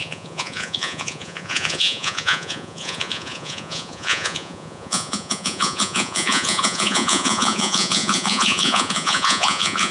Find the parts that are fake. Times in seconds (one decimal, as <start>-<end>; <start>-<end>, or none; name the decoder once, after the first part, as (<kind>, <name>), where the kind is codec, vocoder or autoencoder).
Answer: 0.0-9.9 (vocoder, Vocos)